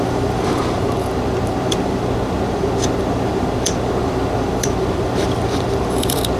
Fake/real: fake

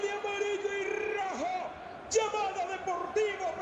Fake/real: real